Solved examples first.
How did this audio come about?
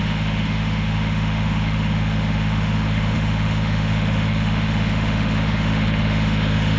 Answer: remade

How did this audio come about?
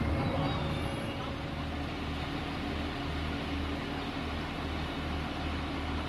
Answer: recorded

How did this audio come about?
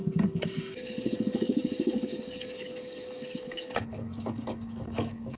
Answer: remade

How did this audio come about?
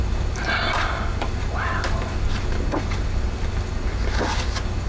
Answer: recorded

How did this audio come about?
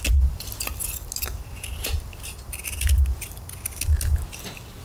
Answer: recorded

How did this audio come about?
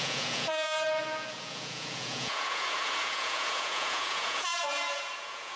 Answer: remade